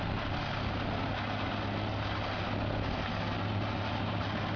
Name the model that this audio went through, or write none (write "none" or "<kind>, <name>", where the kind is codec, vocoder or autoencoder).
none